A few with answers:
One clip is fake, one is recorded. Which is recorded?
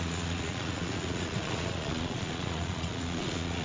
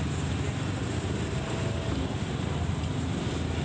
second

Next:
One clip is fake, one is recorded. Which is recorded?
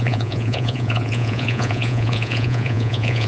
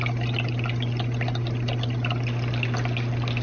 second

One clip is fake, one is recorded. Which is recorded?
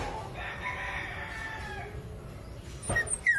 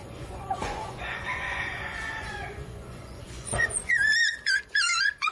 first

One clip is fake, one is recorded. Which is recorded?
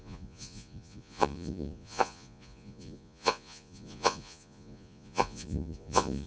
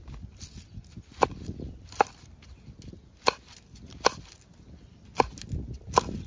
second